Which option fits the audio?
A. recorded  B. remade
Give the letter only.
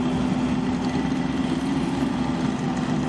A